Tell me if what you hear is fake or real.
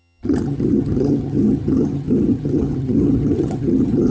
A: fake